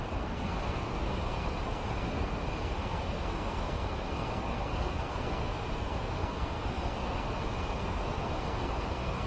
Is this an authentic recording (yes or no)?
no